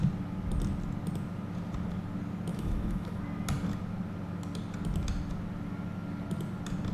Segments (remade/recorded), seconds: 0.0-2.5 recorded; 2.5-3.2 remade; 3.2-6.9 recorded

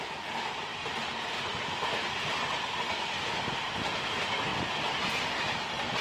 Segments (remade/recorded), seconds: 0.0-6.0 recorded

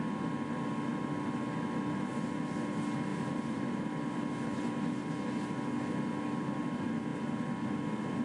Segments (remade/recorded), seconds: 0.0-3.1 recorded; 3.1-3.7 remade; 3.7-8.2 recorded

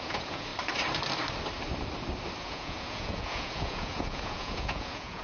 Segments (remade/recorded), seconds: 0.0-0.5 remade; 0.5-2.4 recorded; 2.4-5.2 remade

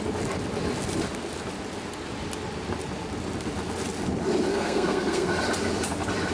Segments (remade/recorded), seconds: 0.0-4.5 recorded; 4.5-5.3 remade; 5.3-6.3 recorded

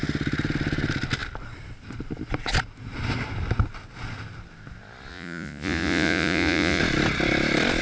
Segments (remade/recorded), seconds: 0.0-5.1 recorded; 5.1-6.8 remade; 6.8-7.8 recorded

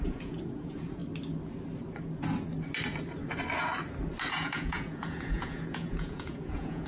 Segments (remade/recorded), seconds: 0.0-1.0 remade; 1.0-4.3 recorded; 4.3-6.9 remade

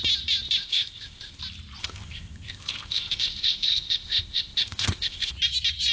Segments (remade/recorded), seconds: 0.0-0.6 recorded; 0.6-1.4 remade; 1.4-1.8 recorded; 1.8-5.3 remade; 5.3-5.9 recorded